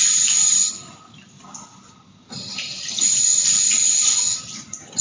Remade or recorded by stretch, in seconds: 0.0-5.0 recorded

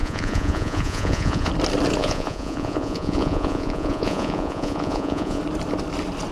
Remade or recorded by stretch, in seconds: 0.0-1.5 remade; 1.5-2.0 recorded; 2.0-5.4 remade; 5.4-6.3 recorded

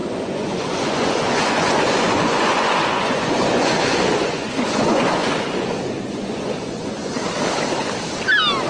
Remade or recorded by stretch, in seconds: 0.0-7.2 remade; 7.2-8.7 recorded

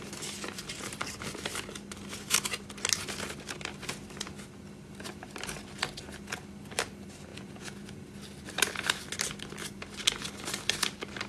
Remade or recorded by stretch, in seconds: 0.0-7.3 recorded; 7.3-8.0 remade; 8.0-11.3 recorded

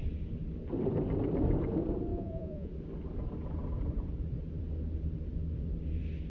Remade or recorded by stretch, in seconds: 0.0-2.1 recorded; 2.1-2.7 remade; 2.7-6.3 recorded